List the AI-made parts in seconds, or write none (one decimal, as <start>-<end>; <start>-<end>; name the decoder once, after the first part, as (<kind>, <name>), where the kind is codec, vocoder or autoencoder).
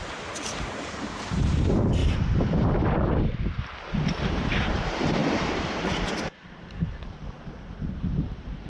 0.0-2.0 (vocoder, BigVGAN v2); 4.2-8.7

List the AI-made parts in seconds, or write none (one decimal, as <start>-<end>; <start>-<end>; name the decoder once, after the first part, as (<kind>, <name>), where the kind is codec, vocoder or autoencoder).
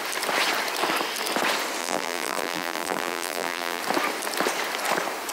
1.8-3.8 (vocoder, BigVGAN v2)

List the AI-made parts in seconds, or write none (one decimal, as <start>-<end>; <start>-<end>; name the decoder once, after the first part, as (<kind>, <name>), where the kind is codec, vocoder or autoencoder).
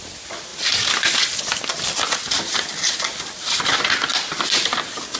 none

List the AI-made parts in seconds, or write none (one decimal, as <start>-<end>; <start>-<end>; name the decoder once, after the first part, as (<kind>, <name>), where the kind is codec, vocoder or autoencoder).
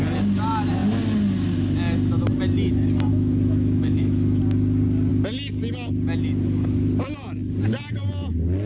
3.1-4.4 (autoencoder, DAC-VAE)